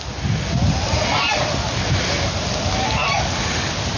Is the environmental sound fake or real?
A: real